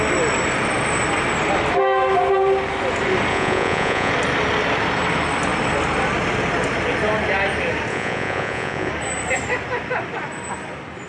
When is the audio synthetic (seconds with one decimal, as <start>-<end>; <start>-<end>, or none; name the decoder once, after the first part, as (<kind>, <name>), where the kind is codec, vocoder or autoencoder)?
3.3-4.1 (vocoder, Vocos); 7.9-8.9